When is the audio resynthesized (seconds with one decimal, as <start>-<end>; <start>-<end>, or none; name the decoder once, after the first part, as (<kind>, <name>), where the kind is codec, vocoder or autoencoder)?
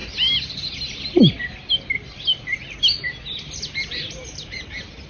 none